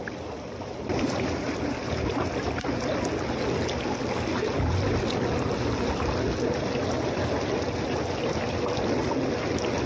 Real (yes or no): yes